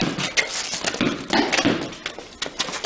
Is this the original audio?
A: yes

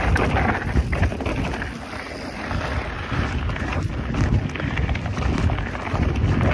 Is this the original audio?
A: yes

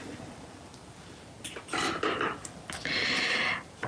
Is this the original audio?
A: yes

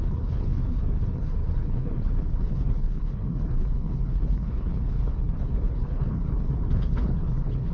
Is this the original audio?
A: no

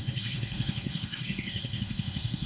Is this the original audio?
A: no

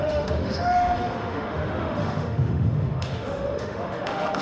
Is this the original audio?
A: no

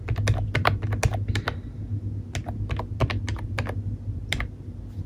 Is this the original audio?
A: yes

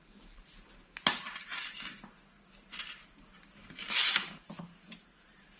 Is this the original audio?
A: no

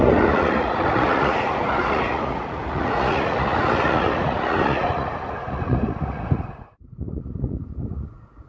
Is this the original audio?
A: no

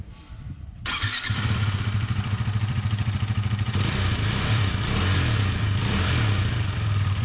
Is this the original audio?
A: no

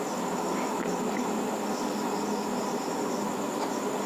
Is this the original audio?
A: yes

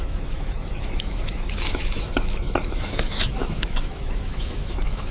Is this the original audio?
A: no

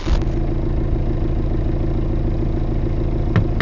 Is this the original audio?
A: yes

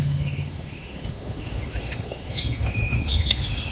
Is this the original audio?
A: no